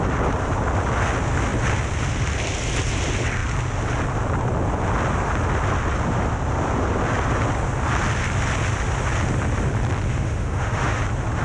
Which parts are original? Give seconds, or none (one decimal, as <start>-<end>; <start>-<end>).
0.0-10.1; 11.0-11.4